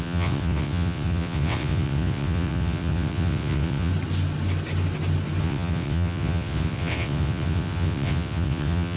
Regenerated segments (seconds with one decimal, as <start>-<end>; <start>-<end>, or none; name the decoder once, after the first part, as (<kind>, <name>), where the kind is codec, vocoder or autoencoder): 0.0-3.9 (vocoder, WaveNeXt); 5.4-9.0